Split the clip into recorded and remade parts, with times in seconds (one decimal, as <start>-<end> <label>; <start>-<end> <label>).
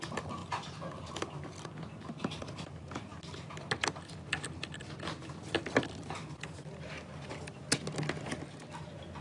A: 0.0-9.2 recorded